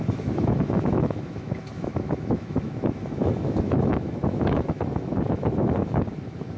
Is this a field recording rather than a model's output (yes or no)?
no